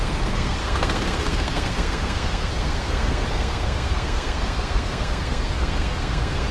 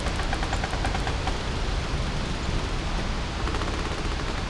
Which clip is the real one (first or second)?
second